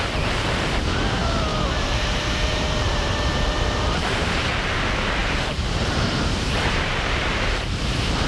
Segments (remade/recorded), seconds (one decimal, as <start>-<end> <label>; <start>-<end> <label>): 0.0-1.5 recorded; 1.5-4.4 remade; 4.4-5.2 recorded; 5.2-7.5 remade; 7.5-8.3 recorded